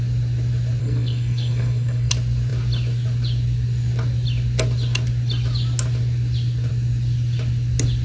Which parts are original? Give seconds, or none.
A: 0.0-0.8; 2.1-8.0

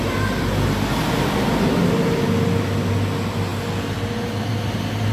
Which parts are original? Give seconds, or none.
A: 0.0-5.1

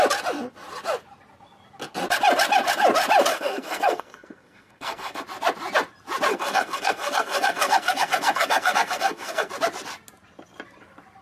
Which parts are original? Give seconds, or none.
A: 0.0-3.3; 5.2-6.3; 9.5-11.2

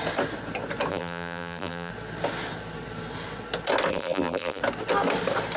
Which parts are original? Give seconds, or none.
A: 0.0-0.9; 1.9-3.9; 4.6-5.6